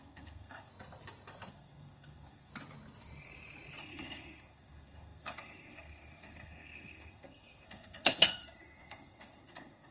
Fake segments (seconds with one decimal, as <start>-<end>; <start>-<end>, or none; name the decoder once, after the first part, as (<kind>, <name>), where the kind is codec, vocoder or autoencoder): 0.0-0.7 (codec, SNAC); 1.5-2.5; 3.8-9.9